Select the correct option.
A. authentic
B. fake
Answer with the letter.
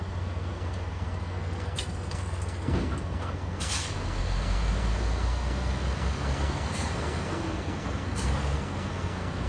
B